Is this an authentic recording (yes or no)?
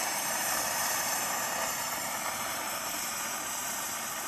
no